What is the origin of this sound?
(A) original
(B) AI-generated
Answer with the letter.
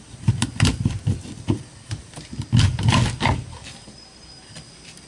A